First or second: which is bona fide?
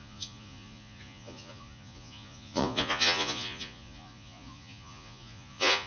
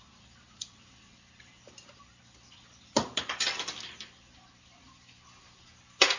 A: second